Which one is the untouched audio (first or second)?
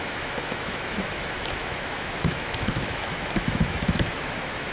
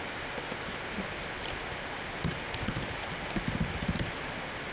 second